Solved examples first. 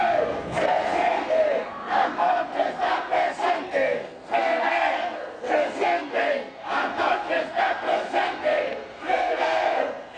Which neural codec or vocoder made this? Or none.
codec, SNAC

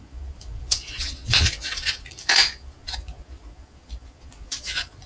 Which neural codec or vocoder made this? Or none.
vocoder, Vocos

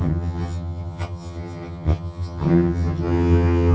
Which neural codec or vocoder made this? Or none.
vocoder, HiFi-GAN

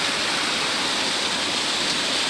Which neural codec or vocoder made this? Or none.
none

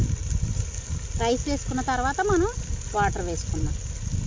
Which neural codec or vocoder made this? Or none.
none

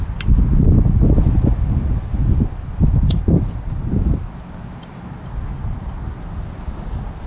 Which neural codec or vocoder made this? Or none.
none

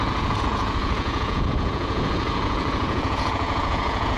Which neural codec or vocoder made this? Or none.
vocoder, Vocos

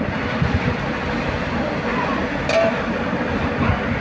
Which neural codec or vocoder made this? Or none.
none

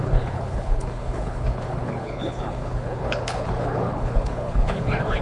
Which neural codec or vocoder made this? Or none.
codec, HILCodec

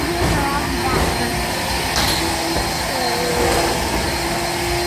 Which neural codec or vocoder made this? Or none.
none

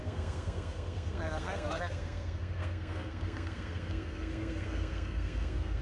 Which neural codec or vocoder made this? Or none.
codec, SNAC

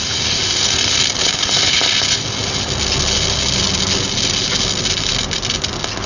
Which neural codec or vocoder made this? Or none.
none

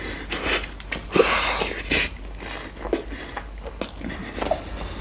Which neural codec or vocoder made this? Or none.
none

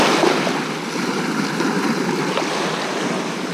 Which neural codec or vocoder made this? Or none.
none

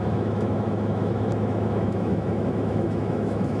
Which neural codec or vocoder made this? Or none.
autoencoder, DAC-VAE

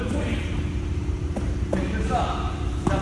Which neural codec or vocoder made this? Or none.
none